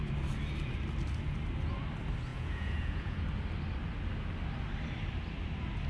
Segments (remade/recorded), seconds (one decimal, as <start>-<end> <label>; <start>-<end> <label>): 0.0-2.3 recorded; 2.3-3.2 remade; 3.2-5.9 recorded